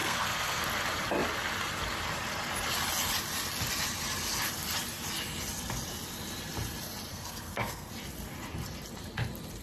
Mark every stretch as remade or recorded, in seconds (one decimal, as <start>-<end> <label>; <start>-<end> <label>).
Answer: 0.0-0.6 remade; 0.6-7.1 recorded; 7.1-7.9 remade; 7.9-9.6 recorded

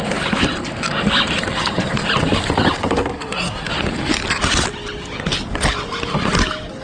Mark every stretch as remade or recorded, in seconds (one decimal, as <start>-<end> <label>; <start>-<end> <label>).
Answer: 0.0-2.8 recorded; 2.8-3.7 remade; 3.7-6.8 recorded

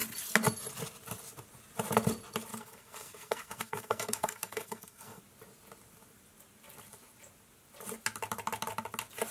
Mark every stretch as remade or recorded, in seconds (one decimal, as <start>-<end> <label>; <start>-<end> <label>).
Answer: 0.0-2.5 recorded; 2.5-5.2 remade; 5.2-9.3 recorded